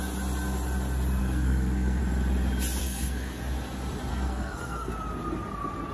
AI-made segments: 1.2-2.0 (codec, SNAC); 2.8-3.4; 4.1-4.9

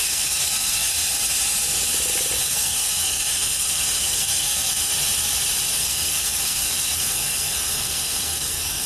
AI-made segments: 0.0-0.9 (codec, SNAC); 2.4-4.9; 5.8-8.9

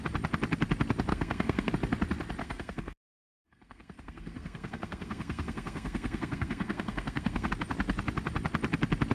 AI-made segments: 1.1-1.7 (codec, SNAC); 2.4-7.5